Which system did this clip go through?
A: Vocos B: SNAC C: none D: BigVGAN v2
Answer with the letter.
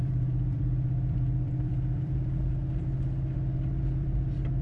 D